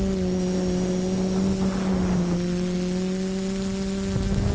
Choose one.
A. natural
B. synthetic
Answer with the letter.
A